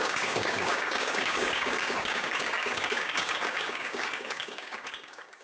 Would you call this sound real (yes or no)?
no